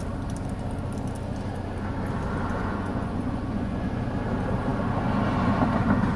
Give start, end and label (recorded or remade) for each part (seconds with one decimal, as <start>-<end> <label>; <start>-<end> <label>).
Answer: 0.0-2.5 recorded; 2.5-4.0 remade; 4.0-6.2 recorded